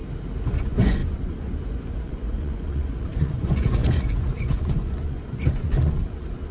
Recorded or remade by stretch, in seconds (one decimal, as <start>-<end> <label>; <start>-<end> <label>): 0.0-0.6 recorded; 0.6-6.5 remade